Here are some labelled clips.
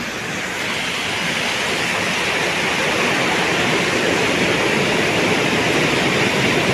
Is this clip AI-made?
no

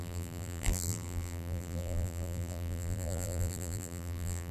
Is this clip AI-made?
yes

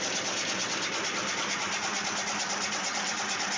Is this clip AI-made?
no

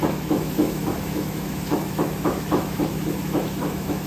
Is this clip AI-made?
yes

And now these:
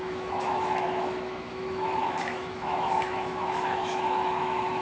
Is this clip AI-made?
yes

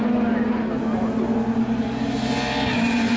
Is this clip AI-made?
no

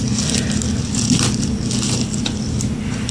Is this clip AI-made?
no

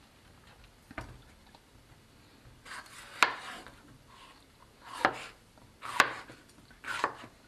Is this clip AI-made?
no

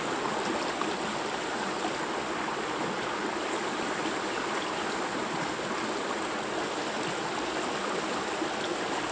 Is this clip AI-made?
no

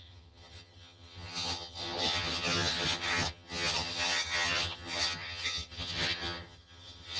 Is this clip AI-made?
yes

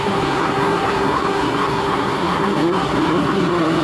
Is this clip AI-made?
yes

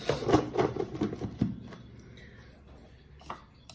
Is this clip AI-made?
no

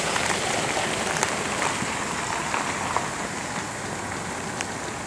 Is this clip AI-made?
no